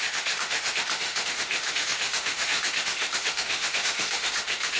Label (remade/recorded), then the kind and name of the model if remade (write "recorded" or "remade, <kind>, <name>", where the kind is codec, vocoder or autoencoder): remade, autoencoder, DAC-VAE